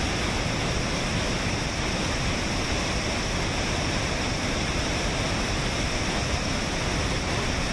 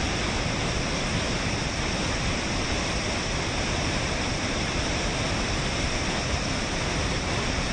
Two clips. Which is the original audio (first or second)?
first